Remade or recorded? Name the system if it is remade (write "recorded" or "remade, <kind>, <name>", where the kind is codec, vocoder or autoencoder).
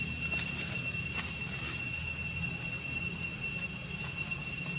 recorded